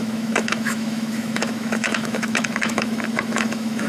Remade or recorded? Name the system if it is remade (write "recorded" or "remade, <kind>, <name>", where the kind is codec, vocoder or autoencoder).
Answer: remade, autoencoder, DAC-VAE